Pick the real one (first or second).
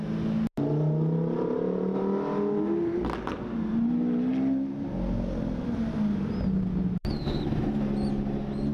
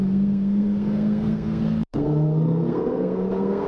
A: first